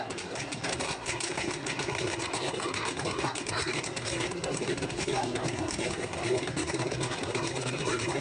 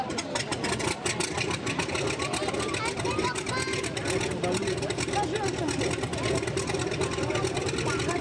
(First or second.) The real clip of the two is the second